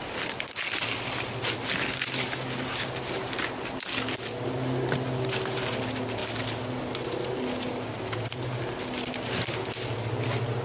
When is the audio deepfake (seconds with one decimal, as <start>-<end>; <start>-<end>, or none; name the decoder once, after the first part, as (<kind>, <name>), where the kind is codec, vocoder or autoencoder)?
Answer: none